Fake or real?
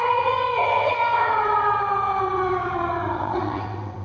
fake